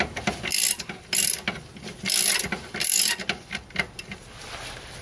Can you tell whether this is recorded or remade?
recorded